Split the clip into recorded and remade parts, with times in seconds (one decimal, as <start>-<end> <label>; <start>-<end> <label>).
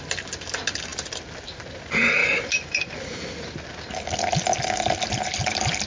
0.0-0.9 recorded; 0.9-1.8 remade; 1.8-2.2 recorded; 2.2-5.9 remade